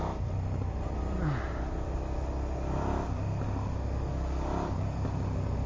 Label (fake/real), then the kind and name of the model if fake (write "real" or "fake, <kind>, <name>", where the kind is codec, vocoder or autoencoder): real